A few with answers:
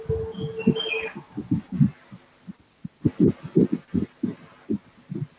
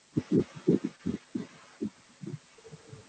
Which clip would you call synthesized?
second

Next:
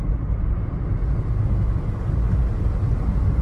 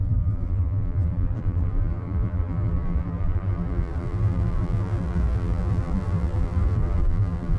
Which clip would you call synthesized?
second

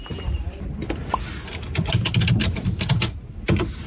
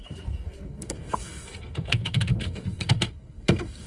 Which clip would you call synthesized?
second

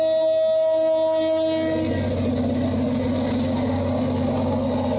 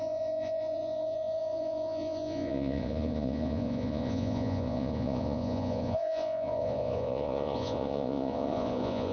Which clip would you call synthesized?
second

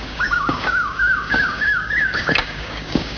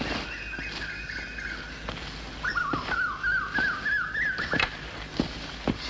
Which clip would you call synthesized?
first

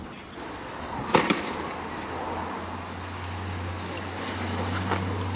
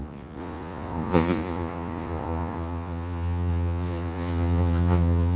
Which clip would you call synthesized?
second